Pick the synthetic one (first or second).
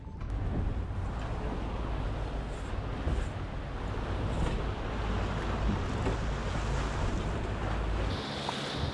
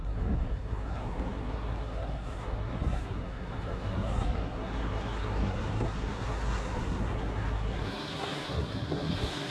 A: second